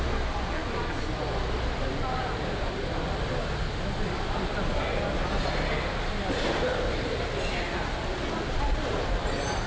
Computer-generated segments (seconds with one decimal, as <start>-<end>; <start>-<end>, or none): none